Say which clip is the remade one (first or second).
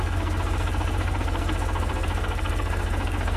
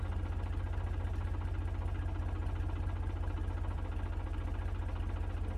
first